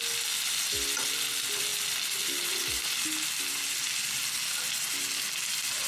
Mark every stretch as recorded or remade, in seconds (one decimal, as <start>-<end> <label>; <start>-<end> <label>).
0.0-5.9 recorded